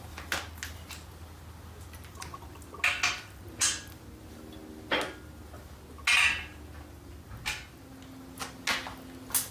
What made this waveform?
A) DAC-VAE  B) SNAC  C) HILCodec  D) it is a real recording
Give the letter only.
D